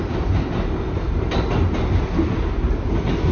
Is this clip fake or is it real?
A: real